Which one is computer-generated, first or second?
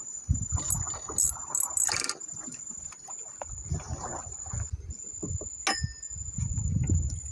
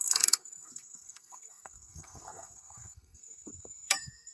second